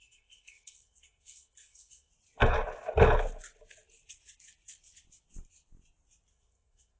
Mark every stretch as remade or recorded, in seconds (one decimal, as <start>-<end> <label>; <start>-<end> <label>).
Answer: 0.0-2.1 remade; 2.1-6.3 recorded; 6.3-7.0 remade